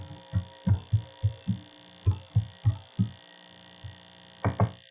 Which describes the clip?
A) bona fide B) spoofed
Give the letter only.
A